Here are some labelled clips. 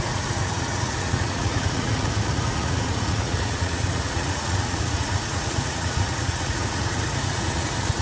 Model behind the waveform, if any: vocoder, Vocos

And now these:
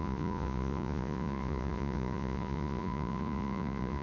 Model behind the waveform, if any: vocoder, Vocos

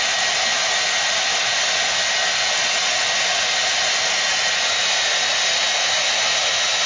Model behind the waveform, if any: none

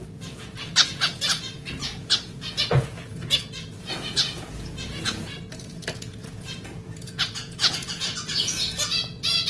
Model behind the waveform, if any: vocoder, Vocos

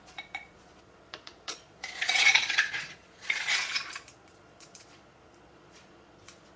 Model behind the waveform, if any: vocoder, Vocos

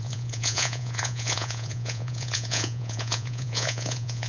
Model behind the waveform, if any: vocoder, Vocos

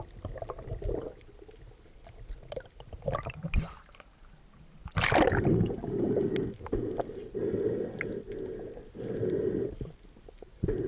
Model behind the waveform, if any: none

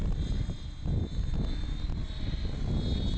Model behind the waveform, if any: none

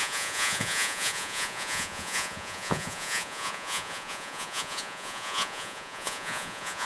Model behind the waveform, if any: vocoder, Vocos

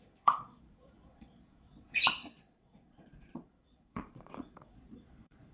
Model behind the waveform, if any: vocoder, Vocos